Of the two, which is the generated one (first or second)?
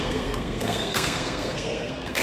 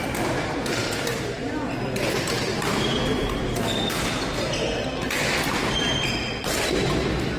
first